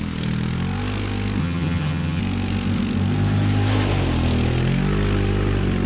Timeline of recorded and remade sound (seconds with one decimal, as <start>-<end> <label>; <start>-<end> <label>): 0.0-1.4 recorded; 1.4-2.2 remade; 2.2-5.9 recorded